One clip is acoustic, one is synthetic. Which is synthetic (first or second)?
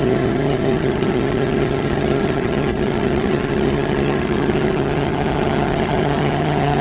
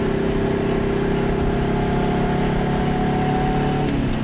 first